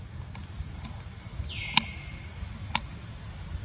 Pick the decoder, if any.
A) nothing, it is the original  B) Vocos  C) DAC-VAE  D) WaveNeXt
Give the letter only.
A